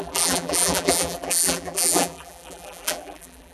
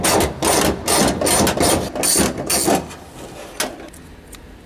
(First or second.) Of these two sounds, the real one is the second